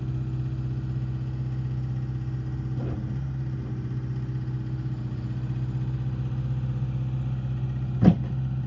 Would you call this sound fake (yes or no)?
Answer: no